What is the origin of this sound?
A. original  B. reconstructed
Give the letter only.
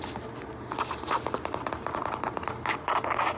A